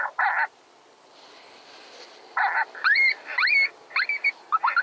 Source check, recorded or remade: recorded